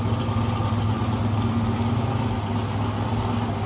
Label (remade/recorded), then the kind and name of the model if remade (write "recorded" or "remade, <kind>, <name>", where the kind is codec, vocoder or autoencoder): recorded